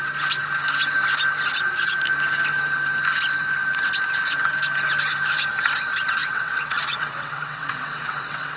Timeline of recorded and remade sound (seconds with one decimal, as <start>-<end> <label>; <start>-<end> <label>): 0.0-6.2 recorded; 6.2-8.6 remade